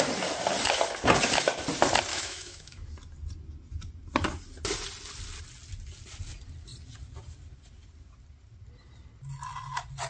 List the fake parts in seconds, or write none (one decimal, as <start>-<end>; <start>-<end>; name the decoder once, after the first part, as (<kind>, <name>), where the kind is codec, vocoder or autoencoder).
2.1-2.9 (autoencoder, DAC-VAE)